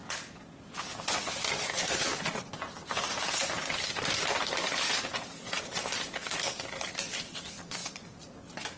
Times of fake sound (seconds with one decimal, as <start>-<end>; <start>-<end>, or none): none